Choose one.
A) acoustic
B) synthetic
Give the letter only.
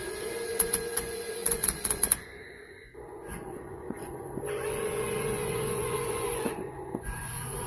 B